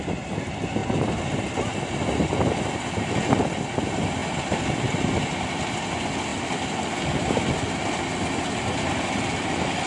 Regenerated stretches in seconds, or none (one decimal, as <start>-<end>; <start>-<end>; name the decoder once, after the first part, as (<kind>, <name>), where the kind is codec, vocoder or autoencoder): 0.8-1.7 (vocoder, BigVGAN v2); 4.2-4.9; 6.3-7.4

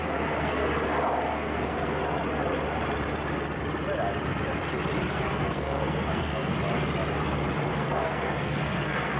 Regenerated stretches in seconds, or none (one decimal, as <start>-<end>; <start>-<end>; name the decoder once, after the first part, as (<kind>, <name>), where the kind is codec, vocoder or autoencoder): 0.0-0.6 (codec, SNAC); 1.3-2.0; 5.1-6.5; 7.7-9.2

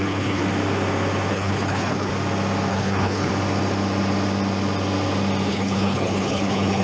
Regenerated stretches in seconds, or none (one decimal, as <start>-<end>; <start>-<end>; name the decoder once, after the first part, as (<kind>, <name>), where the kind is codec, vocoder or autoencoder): 0.0-0.4 (codec, HILCodec); 1.3-2.1; 2.7-3.3; 5.5-6.8

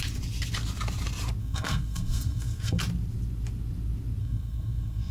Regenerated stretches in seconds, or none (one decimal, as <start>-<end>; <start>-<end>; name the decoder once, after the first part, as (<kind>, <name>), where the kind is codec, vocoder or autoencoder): 1.4-2.8 (codec, SNAC); 4.2-5.1

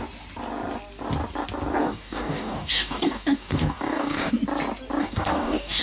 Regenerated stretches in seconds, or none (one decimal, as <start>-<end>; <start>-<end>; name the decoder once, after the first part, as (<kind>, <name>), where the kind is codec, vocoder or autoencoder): 1.8-4.3 (codec, DAC); 5.0-5.8

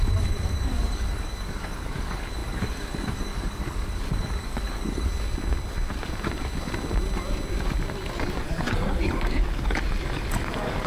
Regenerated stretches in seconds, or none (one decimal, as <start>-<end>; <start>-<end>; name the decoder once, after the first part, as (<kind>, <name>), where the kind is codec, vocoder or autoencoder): 0.0-5.1 (codec, DAC); 8.4-10.9

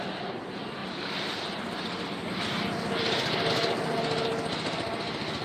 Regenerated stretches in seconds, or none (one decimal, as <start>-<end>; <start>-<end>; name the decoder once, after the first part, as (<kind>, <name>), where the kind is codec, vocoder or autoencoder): none

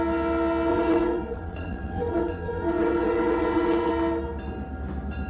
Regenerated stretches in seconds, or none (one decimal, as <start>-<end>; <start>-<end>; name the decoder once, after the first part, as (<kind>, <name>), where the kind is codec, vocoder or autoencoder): 0.7-3.9 (vocoder, WaveNeXt)